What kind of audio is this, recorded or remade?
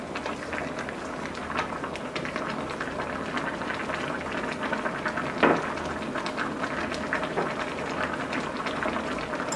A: recorded